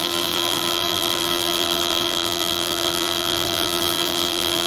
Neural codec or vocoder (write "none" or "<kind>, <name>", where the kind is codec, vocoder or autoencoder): vocoder, BigVGAN v2